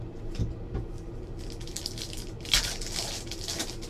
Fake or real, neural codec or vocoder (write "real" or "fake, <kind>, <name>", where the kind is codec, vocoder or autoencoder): real